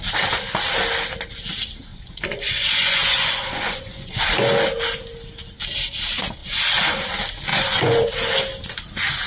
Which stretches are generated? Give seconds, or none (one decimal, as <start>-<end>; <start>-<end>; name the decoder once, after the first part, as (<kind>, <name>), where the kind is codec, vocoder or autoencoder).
1.9-4.2 (vocoder, Vocos); 7.5-8.1